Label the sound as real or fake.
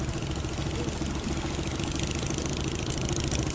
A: real